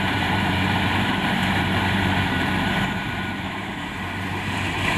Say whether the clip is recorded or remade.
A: remade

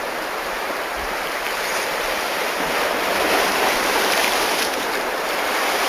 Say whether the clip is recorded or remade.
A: remade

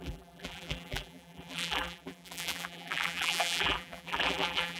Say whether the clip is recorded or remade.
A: remade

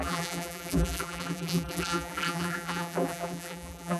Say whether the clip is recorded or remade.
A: remade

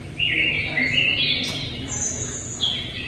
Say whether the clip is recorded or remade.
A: recorded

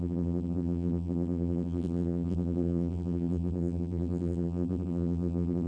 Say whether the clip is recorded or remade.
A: remade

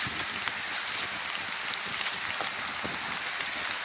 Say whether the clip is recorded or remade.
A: recorded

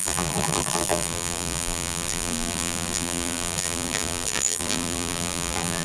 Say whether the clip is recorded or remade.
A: remade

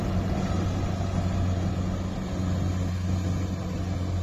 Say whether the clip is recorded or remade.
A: recorded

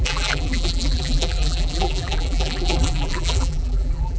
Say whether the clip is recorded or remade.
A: remade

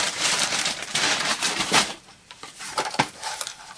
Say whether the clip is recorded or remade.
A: remade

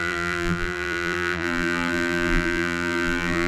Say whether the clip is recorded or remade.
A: remade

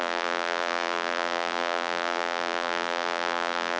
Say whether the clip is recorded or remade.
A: remade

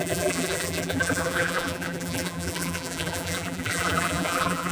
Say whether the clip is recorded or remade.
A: remade